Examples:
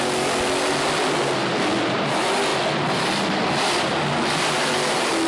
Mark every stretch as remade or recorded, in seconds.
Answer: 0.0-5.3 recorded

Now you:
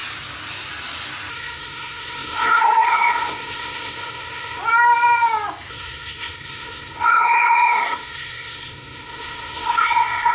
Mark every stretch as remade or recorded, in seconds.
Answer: 0.0-1.3 recorded; 1.3-4.6 remade; 4.6-5.7 recorded; 5.7-10.3 remade

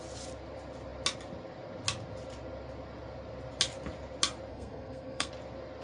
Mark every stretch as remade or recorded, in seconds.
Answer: 0.0-4.5 recorded; 4.5-5.3 remade; 5.3-5.8 recorded

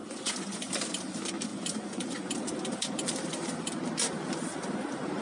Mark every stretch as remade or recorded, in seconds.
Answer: 0.0-0.7 remade; 0.7-1.5 recorded; 1.5-2.3 remade; 2.3-5.2 recorded

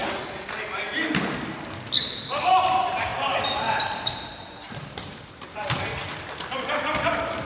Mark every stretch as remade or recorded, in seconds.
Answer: 0.0-2.0 recorded; 2.0-3.1 remade; 3.1-3.9 recorded; 3.9-7.4 remade